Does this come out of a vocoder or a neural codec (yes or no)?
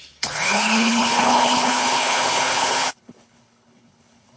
yes